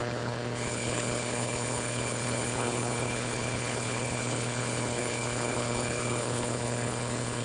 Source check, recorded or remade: remade